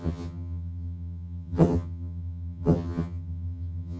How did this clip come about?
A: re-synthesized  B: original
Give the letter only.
A